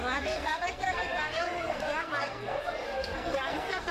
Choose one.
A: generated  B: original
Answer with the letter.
A